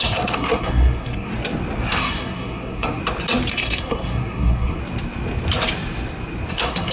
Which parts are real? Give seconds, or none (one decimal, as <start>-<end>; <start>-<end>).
1.3-2.0; 3.0-3.5; 4.8-6.5